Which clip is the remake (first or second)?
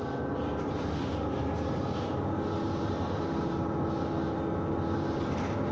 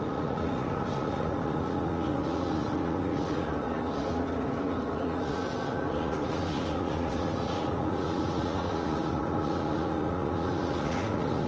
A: second